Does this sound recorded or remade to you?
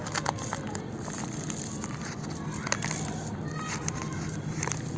recorded